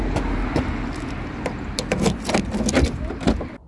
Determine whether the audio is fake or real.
real